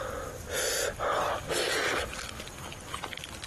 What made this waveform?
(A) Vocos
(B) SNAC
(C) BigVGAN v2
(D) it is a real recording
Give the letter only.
C